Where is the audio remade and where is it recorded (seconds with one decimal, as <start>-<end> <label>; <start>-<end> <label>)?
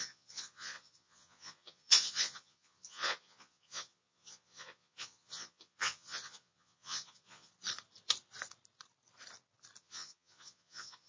0.0-7.5 remade; 7.5-9.8 recorded; 9.8-11.1 remade